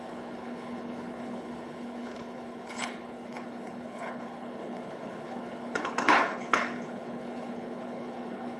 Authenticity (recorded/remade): remade